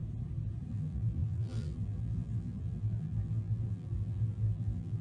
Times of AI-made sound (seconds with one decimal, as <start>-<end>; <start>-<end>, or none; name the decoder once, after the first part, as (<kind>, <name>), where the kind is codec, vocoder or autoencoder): 0.7-5.0 (vocoder, BigVGAN v2)